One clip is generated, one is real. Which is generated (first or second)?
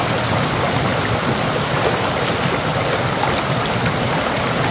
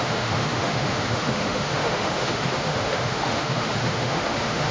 second